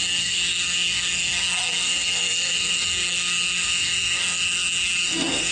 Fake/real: fake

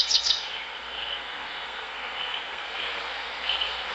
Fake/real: fake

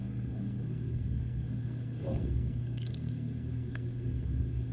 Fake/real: fake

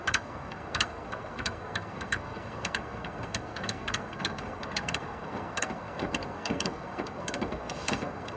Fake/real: fake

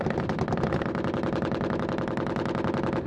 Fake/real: real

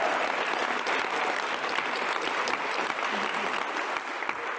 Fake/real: real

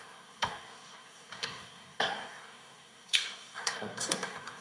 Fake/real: fake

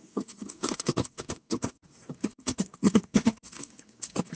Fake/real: fake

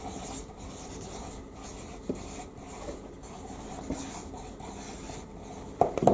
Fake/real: real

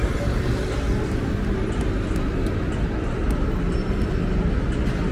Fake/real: real